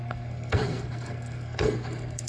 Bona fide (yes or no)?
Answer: no